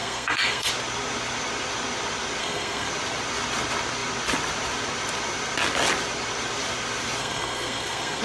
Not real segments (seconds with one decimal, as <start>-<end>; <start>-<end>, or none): 0.0-0.7; 2.4-2.9; 7.2-8.2